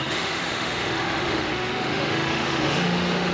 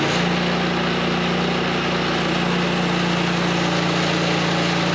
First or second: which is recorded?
second